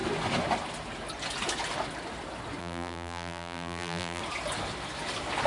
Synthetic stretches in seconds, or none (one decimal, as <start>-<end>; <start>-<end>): 2.6-4.2